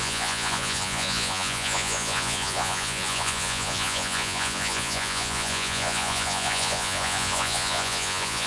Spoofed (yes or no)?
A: yes